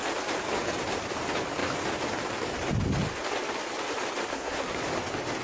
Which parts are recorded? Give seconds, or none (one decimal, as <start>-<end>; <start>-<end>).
0.0-4.3; 4.8-5.4